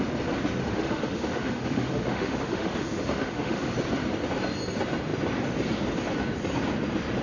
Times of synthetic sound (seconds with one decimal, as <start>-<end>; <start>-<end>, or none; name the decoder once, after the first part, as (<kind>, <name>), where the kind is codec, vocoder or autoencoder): 0.6-3.7 (autoencoder, DAC-VAE)